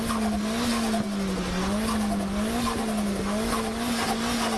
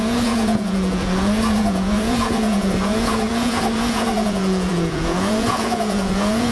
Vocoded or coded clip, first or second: second